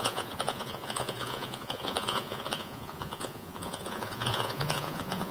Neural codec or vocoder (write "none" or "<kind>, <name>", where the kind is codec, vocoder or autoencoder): vocoder, Vocos